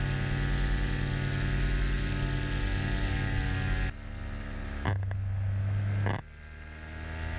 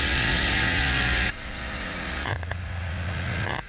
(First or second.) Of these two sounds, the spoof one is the second